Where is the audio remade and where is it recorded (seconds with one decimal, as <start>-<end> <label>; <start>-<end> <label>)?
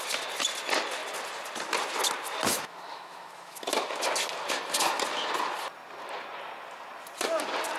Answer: 0.0-2.5 recorded; 2.5-3.6 remade; 3.6-7.8 recorded